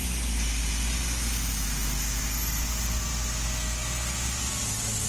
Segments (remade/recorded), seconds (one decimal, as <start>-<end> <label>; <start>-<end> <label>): 0.0-5.1 recorded